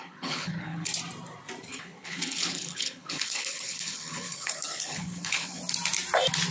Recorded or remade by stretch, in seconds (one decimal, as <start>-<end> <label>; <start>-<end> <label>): 0.0-0.9 remade; 0.9-1.7 recorded; 1.7-5.6 remade; 5.6-6.5 recorded